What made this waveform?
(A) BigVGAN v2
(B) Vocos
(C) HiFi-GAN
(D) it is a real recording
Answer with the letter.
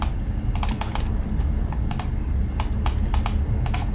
D